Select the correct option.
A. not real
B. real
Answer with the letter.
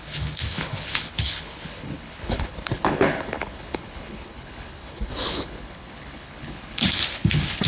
A